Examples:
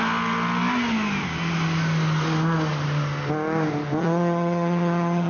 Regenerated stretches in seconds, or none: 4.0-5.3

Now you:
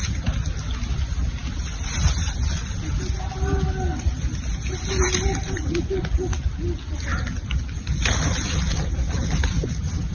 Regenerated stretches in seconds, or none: none